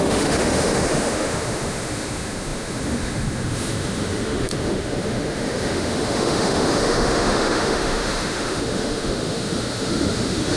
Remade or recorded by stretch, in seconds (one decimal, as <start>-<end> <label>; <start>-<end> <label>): 0.0-10.6 remade